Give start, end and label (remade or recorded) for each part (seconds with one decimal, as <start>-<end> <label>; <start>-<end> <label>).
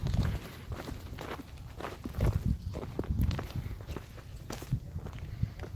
0.0-0.6 remade; 0.6-5.8 recorded